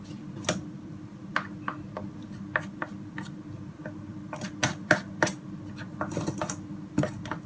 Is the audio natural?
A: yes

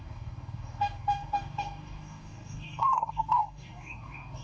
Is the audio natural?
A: no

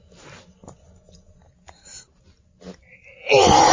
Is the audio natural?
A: yes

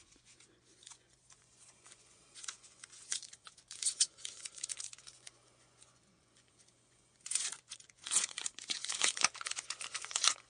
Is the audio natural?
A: no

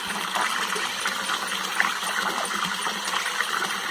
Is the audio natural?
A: no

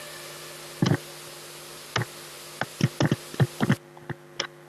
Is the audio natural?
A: yes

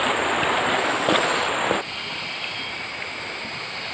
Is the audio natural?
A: yes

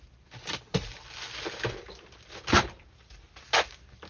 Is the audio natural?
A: yes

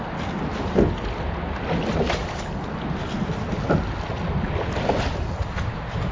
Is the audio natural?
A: yes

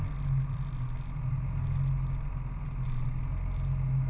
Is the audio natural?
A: yes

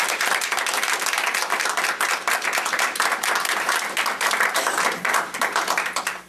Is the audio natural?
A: no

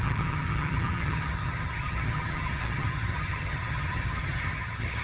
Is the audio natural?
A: no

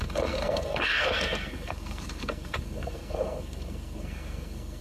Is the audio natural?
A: no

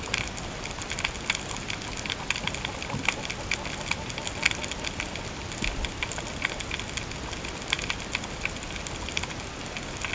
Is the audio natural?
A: yes